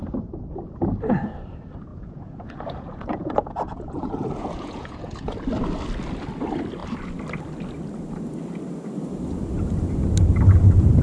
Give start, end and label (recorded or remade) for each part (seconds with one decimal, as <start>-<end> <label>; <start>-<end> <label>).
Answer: 0.0-1.9 recorded; 1.9-5.3 remade; 5.3-11.0 recorded